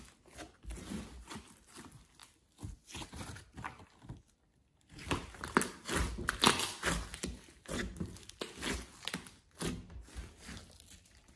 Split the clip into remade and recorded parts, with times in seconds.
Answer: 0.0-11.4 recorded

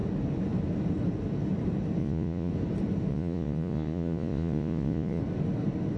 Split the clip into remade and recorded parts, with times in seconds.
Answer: 0.0-2.0 recorded; 2.0-2.5 remade; 2.5-3.1 recorded; 3.1-5.2 remade; 5.2-6.0 recorded

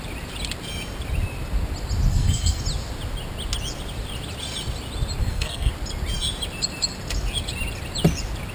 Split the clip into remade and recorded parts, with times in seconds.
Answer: 0.0-2.1 recorded; 2.1-2.6 remade; 2.6-5.2 recorded; 5.2-5.7 remade; 5.7-8.5 recorded

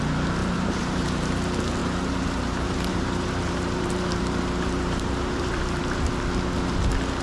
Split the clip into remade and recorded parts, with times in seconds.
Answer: 0.0-0.4 recorded; 0.4-1.3 remade; 1.3-1.8 recorded; 1.8-5.8 remade; 5.8-7.2 recorded

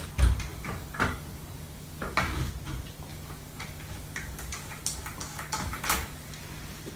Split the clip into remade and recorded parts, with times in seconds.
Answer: 0.0-0.5 recorded; 0.5-2.5 remade; 2.5-3.1 recorded; 3.1-6.3 remade; 6.3-7.0 recorded

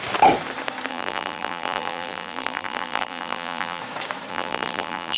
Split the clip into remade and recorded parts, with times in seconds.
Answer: 0.0-0.9 recorded; 0.9-3.8 remade; 3.8-4.3 recorded; 4.3-5.2 remade